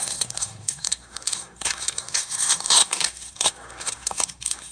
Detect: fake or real fake